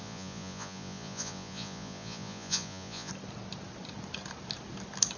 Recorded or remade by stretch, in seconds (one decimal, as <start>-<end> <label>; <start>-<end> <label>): 0.0-3.1 remade; 3.1-5.2 recorded